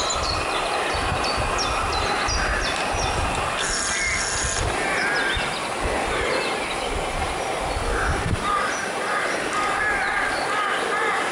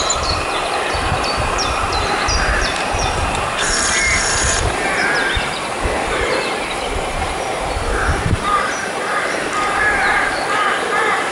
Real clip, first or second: first